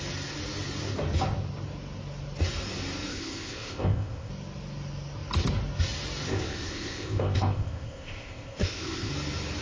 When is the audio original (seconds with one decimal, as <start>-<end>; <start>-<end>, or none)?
0.0-3.1; 4.3-6.3; 9.1-9.6